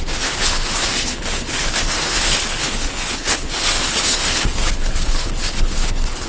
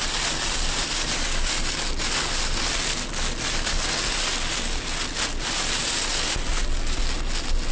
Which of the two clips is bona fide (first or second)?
second